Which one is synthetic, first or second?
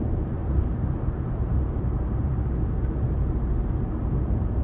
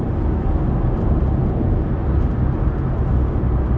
first